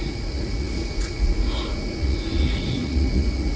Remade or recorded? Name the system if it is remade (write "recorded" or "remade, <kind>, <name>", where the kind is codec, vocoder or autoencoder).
remade, vocoder, Vocos